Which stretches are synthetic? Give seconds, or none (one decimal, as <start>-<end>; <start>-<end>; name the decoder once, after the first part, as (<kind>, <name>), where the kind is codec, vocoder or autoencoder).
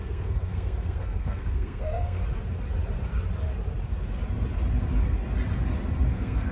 0.0-2.2 (codec, SNAC); 6.1-6.5